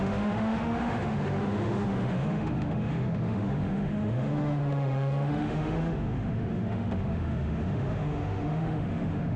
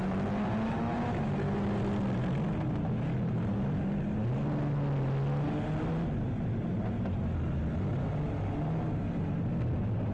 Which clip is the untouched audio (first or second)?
second